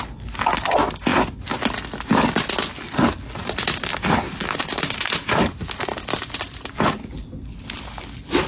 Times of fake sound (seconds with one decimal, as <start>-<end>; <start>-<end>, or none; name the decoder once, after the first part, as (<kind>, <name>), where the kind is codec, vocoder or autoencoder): none